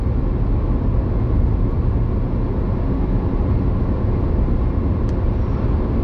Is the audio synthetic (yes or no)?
no